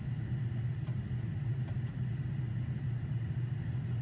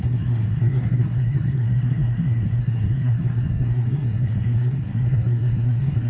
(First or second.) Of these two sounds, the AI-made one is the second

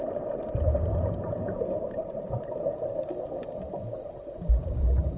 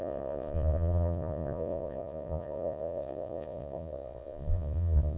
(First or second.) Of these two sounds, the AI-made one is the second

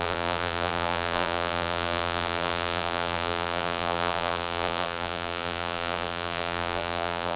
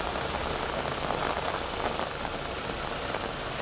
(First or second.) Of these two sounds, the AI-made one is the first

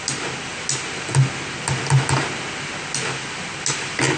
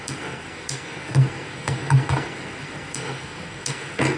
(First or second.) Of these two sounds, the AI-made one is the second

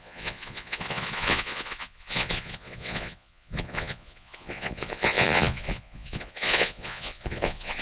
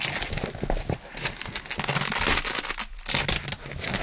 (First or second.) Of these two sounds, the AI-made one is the first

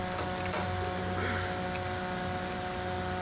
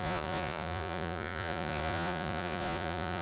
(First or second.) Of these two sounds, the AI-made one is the second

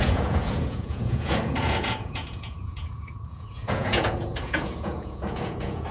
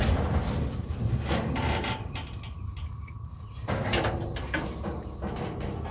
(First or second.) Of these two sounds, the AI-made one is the first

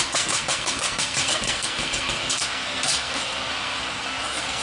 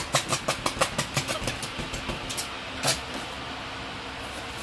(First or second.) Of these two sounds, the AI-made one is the first